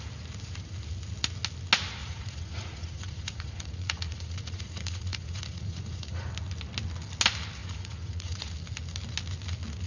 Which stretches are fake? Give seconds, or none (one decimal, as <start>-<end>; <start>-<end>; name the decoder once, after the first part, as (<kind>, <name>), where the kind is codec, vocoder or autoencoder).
2.0-6.3 (vocoder, Vocos); 7.6-8.5